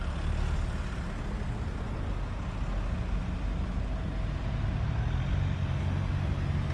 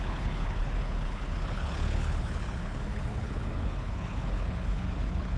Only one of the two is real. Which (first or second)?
first